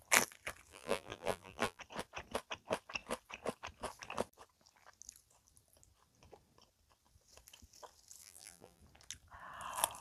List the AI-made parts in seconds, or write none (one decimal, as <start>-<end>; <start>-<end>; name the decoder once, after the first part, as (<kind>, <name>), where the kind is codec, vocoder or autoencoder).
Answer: 0.7-1.8 (vocoder, BigVGAN v2); 8.2-8.8